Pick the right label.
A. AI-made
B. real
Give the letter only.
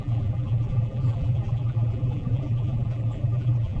A